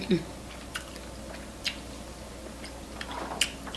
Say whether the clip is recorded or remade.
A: recorded